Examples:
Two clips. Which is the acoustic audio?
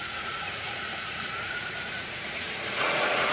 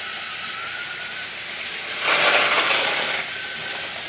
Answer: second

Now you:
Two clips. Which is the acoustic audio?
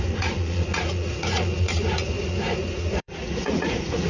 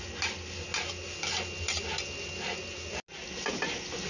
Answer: second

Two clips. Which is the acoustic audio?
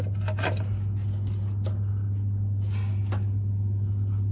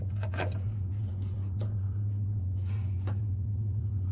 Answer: first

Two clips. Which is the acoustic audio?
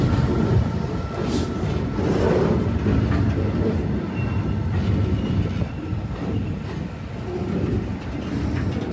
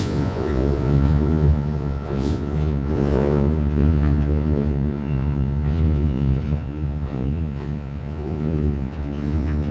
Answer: first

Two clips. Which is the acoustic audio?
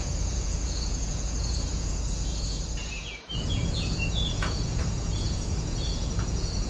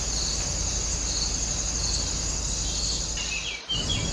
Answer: second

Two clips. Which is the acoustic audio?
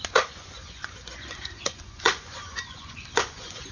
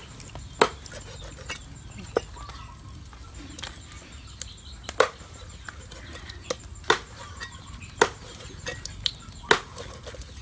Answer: second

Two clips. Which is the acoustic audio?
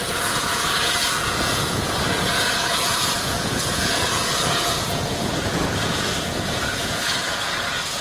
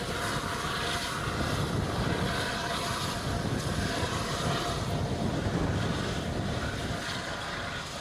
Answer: second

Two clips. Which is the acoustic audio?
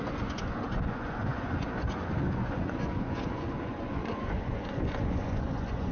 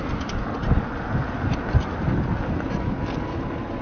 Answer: second